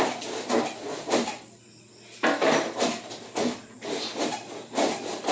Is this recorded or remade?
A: recorded